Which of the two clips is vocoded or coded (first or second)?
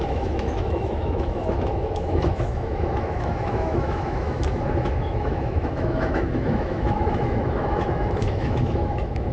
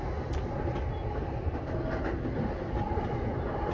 first